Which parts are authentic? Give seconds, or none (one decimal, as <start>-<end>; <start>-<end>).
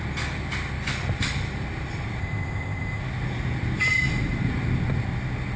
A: 0.0-2.2; 3.0-5.6